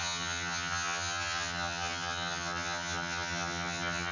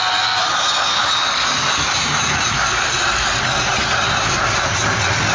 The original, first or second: second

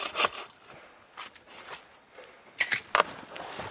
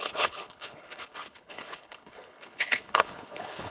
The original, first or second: first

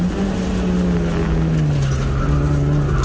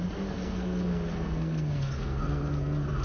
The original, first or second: first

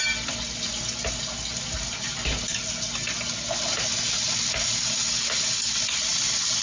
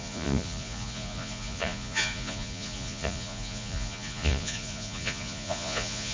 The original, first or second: first